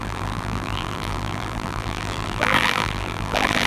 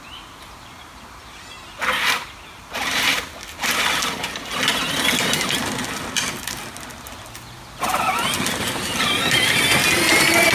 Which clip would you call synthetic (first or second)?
first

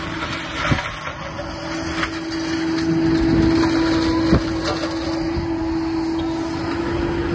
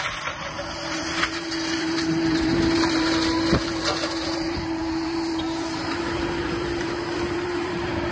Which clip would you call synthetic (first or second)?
second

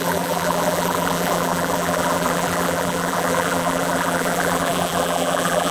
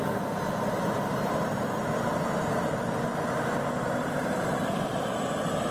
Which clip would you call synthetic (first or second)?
first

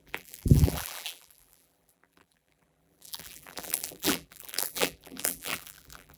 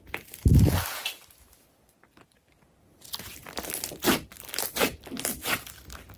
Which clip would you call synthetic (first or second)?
first